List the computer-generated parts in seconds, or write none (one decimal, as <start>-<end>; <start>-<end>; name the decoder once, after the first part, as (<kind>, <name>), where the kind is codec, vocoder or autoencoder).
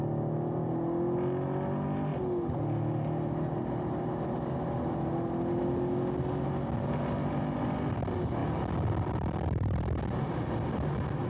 none